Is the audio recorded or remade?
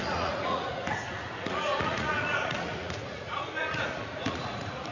remade